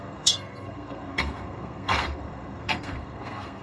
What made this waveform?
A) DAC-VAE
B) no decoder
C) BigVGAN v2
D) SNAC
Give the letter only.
D